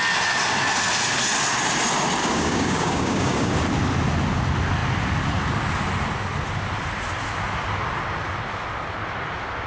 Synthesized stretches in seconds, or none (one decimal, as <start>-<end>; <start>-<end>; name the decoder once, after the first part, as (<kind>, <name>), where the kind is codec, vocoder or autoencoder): 2.2-3.5 (codec, DAC)